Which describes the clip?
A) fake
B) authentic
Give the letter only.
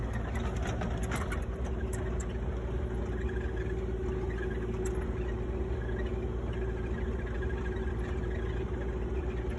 B